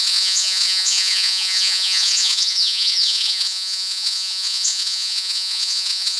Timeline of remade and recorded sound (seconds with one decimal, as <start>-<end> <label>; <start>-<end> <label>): 0.0-6.2 remade

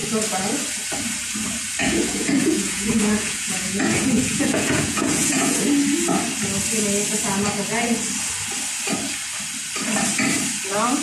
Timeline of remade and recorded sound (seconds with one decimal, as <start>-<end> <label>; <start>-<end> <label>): 0.0-1.8 recorded; 1.8-5.6 remade; 5.6-11.0 recorded